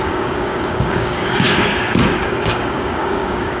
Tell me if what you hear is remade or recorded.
remade